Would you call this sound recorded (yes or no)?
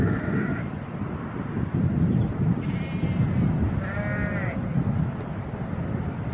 yes